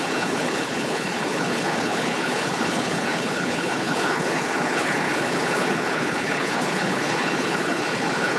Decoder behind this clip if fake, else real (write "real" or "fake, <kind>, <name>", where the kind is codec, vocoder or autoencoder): fake, codec, HILCodec